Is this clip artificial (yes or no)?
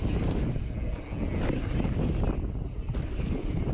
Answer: no